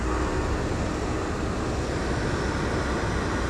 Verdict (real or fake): real